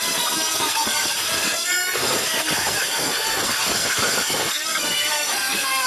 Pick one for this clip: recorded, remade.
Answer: remade